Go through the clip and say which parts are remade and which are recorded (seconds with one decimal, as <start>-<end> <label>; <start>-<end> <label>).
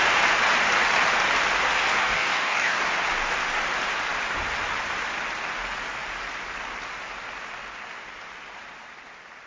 0.0-2.0 recorded; 2.0-2.8 remade; 2.8-9.5 recorded